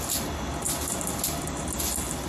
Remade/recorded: recorded